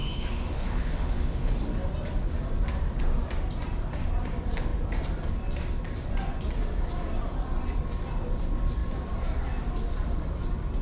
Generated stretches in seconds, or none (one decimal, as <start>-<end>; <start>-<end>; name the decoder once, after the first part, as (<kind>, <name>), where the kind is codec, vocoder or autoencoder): 0.0-1.5 (autoencoder, DAC-VAE)